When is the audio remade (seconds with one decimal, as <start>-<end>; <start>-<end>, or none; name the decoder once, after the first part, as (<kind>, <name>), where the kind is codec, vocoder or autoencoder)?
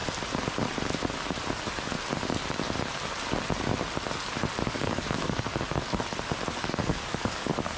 4.7-5.5 (codec, DAC); 6.5-7.8